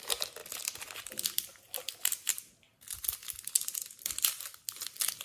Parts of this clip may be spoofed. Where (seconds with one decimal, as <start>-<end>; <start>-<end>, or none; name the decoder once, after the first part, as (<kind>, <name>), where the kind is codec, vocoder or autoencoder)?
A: none